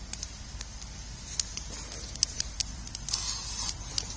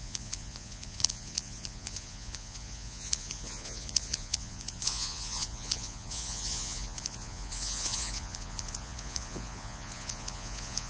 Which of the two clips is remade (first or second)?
second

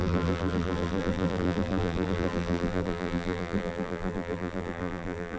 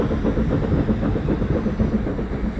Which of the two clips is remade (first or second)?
first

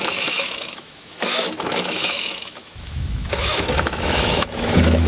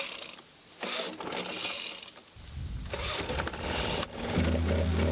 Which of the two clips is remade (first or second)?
first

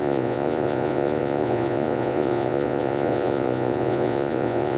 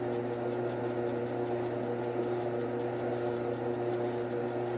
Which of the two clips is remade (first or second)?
first